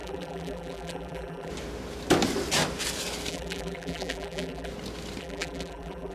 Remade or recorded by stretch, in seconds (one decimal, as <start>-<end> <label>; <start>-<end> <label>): 0.0-1.5 remade; 1.5-3.3 recorded; 3.3-4.7 remade; 4.7-5.2 recorded; 5.2-6.1 remade